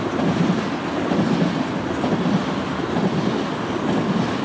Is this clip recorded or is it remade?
recorded